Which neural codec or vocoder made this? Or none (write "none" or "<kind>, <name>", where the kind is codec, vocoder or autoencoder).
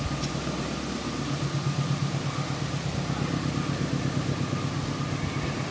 none